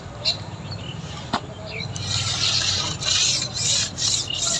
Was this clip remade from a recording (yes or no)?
no